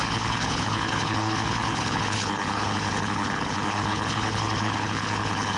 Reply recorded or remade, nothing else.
remade